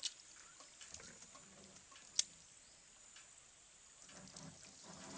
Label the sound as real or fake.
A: real